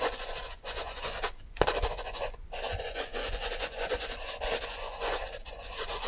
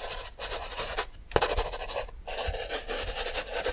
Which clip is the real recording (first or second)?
second